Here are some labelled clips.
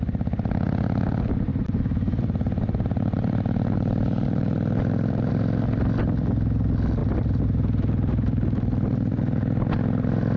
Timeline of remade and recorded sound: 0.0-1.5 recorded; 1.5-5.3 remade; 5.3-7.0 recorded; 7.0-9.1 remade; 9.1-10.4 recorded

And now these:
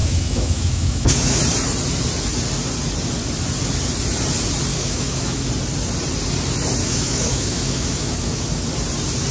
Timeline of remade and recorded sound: 0.0-1.4 remade; 1.4-4.7 recorded; 4.7-5.5 remade; 5.5-6.8 recorded; 6.8-8.7 remade; 8.7-9.3 recorded

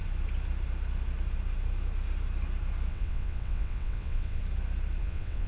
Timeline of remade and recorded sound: 0.0-2.9 recorded; 2.9-4.4 remade; 4.4-5.0 recorded; 5.0-5.5 remade

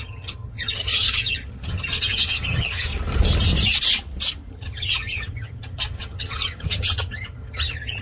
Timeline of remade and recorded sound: 0.0-2.9 remade; 2.9-4.5 recorded; 4.5-8.0 remade

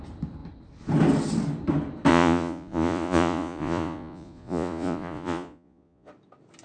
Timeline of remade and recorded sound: 0.0-2.1 recorded; 2.1-6.1 remade; 6.1-6.6 recorded